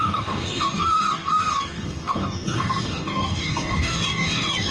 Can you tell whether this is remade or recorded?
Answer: remade